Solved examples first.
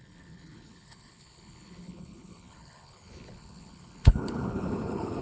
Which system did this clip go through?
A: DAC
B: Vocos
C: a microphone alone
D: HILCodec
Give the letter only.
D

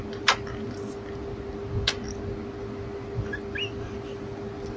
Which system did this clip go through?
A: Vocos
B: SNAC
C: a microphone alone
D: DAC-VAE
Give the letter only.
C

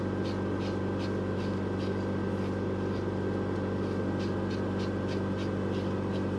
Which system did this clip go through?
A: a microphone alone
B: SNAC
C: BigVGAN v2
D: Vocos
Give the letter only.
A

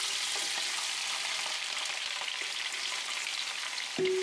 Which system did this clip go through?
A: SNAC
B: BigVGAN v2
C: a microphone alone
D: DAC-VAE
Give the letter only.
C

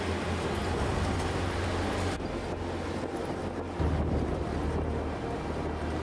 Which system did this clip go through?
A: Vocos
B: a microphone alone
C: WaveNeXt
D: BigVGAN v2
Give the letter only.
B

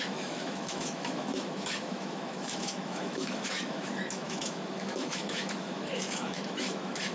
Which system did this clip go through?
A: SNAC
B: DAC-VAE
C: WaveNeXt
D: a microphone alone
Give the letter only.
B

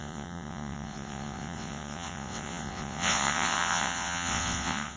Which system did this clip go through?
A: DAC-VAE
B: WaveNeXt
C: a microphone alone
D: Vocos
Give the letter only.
B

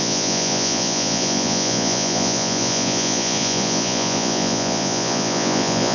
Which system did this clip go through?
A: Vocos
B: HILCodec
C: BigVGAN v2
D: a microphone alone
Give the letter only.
A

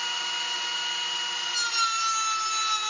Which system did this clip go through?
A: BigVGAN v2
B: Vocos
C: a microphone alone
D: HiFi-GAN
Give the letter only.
C